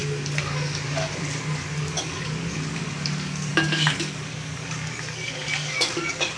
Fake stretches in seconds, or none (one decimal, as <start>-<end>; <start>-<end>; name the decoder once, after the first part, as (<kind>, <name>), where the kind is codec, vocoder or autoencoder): 0.0-6.4 (codec, DAC)